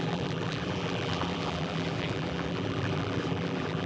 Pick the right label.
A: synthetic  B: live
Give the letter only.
A